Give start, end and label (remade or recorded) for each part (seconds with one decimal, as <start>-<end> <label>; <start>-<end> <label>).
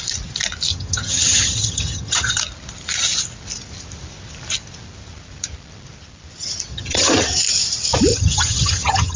0.0-0.7 recorded; 0.7-2.4 remade; 2.4-6.7 recorded; 6.7-7.4 remade; 7.4-8.1 recorded; 8.1-9.2 remade